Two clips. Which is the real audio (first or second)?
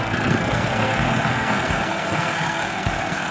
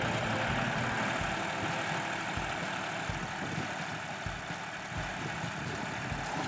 second